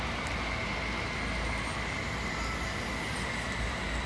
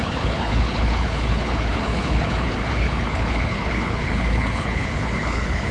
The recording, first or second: first